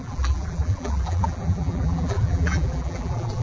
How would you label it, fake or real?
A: fake